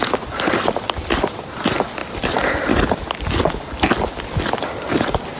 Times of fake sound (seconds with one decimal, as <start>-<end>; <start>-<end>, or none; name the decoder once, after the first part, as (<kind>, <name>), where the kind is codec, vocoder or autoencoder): none